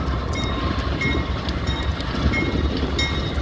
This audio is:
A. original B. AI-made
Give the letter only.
A